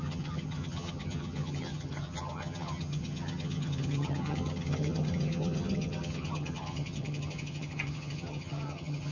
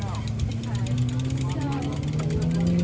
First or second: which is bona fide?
second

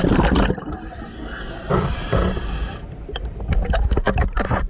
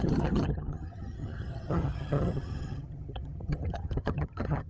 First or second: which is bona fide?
first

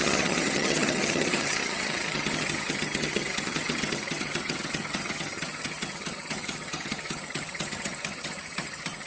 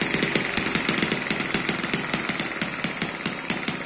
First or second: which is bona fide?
second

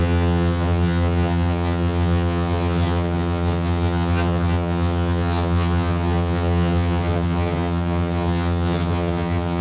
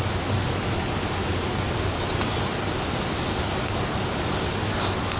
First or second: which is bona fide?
second